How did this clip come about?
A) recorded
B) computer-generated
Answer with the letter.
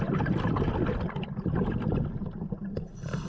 A